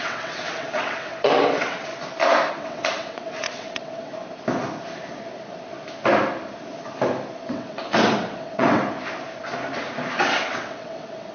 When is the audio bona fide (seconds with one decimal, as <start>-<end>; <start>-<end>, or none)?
1.9-2.5; 4.1-7.5; 8.8-10.2